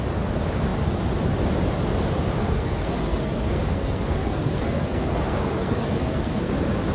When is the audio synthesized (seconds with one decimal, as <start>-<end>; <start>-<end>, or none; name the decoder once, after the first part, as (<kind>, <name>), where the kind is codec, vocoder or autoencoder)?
2.4-6.5 (codec, SNAC)